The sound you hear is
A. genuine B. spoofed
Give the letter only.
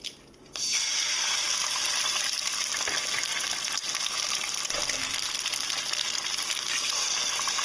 A